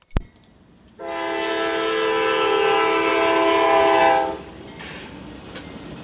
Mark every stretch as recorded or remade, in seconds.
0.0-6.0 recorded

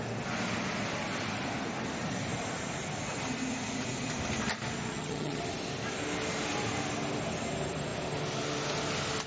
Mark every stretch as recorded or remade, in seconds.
0.0-4.9 recorded; 4.9-5.4 remade; 5.4-9.3 recorded

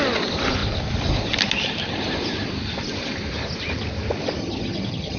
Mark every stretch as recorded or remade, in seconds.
0.0-4.4 recorded; 4.4-5.2 remade

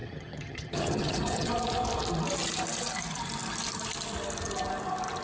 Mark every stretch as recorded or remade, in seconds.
0.0-1.5 remade; 1.5-5.2 recorded

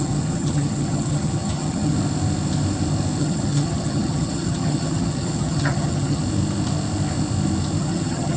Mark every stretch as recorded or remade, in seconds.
0.0-1.9 remade; 1.9-3.2 recorded; 3.2-6.2 remade; 6.2-7.8 recorded; 7.8-8.4 remade

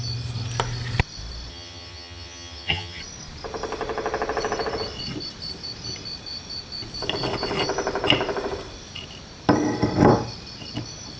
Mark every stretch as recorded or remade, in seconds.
0.0-1.5 recorded; 1.5-3.0 remade; 3.0-11.2 recorded

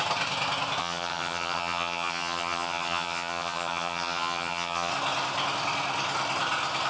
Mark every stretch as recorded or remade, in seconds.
0.0-0.8 recorded; 0.8-4.9 remade; 4.9-6.9 recorded